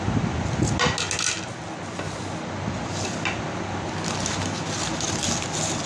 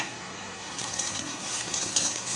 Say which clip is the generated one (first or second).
second